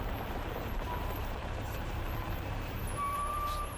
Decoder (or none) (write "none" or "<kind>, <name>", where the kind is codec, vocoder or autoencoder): vocoder, BigVGAN v2